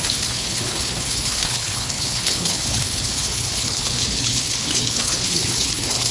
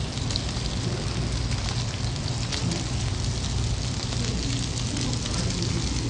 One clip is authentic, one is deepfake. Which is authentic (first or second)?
second